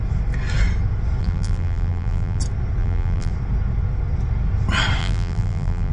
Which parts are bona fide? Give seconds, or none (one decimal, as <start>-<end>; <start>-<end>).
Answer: 0.0-1.2; 2.4-2.8; 3.3-5.0